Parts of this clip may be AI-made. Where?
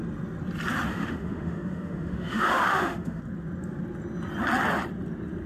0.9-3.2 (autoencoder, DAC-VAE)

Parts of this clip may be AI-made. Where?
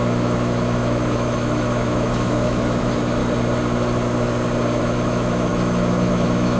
0.0-3.2 (autoencoder, DAC-VAE); 4.8-6.6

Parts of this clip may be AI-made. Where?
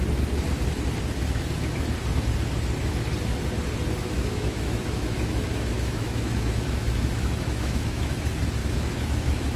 4.0-8.1 (autoencoder, DAC-VAE); 8.6-9.6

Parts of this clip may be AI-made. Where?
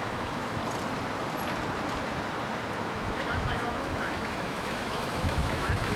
0.0-0.6 (autoencoder, DAC-VAE); 2.8-6.0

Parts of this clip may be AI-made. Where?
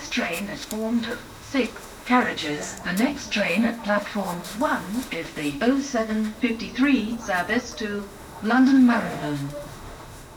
0.0-6.4 (autoencoder, DAC-VAE); 8.0-10.4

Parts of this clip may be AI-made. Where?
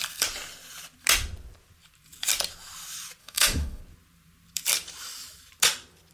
3.2-3.8 (autoencoder, DAC-VAE)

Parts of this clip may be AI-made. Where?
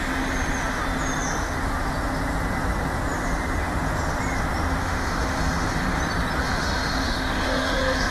4.8-6.0 (autoencoder, DAC-VAE); 6.4-8.1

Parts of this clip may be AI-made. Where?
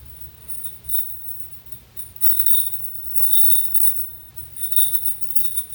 0.9-1.4 (autoencoder, DAC-VAE); 2.8-4.3